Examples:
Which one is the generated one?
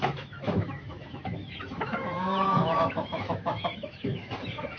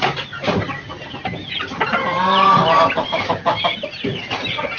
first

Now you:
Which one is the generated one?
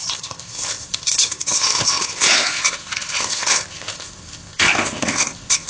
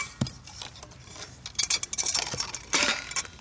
first